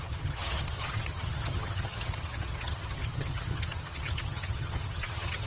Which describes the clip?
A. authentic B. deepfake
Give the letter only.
B